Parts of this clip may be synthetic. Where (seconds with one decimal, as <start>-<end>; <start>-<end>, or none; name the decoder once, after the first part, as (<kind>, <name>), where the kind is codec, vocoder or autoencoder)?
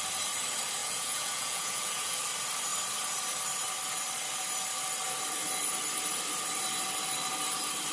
0.8-2.2 (vocoder, Vocos)